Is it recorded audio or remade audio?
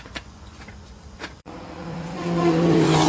remade